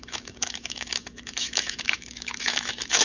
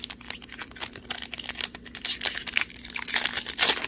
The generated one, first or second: first